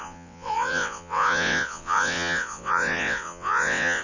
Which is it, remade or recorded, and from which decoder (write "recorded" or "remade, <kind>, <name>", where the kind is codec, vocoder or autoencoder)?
remade, vocoder, WaveNeXt